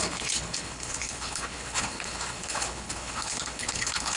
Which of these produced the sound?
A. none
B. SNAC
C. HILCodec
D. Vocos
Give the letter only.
C